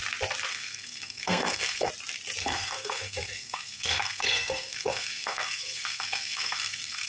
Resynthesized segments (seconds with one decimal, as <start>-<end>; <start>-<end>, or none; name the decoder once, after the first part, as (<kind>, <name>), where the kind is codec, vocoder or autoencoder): 0.5-1.9 (codec, SNAC); 2.4-7.1